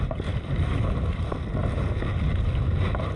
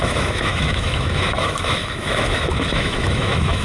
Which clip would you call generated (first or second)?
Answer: second